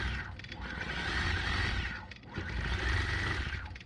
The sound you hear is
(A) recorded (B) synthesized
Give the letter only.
A